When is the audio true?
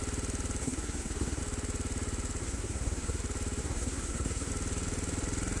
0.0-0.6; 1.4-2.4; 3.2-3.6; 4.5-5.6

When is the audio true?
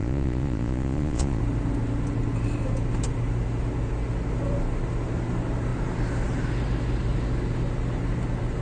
1.4-8.6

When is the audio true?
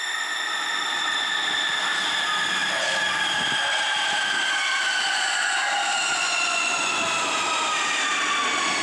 0.0-5.1; 5.7-6.2; 6.9-8.8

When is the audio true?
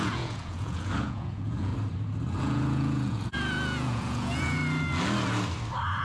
1.7-2.4; 4.6-6.0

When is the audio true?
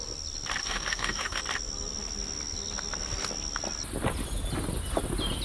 0.0-0.6; 1.4-5.4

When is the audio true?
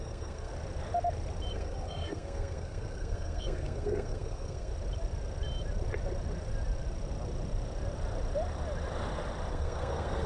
0.5-1.5; 4.7-9.5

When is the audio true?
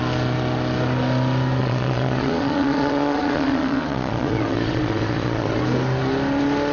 0.0-1.6; 5.6-6.7